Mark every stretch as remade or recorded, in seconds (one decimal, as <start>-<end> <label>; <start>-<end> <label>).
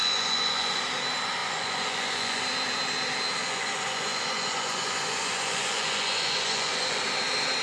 0.0-0.8 remade; 0.8-1.4 recorded; 1.4-2.4 remade; 2.4-3.4 recorded; 3.4-7.0 remade; 7.0-7.6 recorded